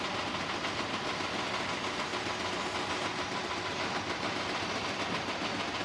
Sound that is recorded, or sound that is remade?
recorded